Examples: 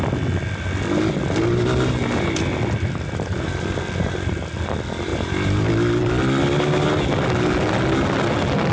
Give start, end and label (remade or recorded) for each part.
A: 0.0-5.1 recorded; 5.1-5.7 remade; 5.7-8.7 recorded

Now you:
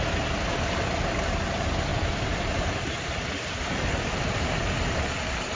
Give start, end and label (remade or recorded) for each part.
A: 0.0-1.9 recorded; 1.9-5.6 remade

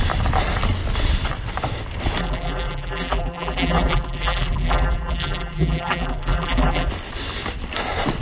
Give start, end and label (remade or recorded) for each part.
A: 0.0-2.2 recorded; 2.2-6.9 remade; 6.9-8.2 recorded